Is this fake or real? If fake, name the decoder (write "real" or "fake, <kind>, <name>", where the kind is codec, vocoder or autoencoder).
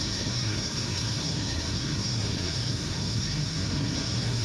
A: fake, codec, SNAC